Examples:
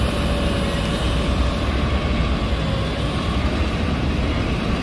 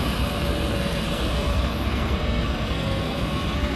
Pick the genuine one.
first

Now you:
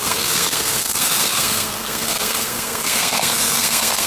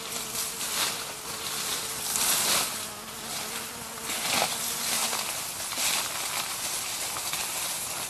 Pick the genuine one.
second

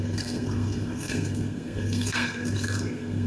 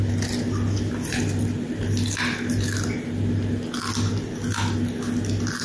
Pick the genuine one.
second